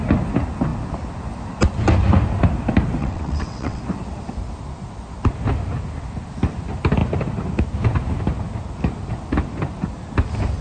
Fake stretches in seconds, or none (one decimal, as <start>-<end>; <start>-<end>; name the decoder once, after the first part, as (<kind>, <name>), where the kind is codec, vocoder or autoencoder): 3.0-3.8 (vocoder, WaveNeXt)